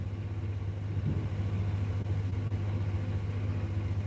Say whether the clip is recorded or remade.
recorded